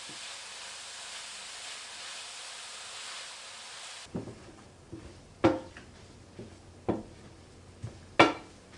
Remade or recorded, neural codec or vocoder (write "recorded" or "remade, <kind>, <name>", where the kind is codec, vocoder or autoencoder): recorded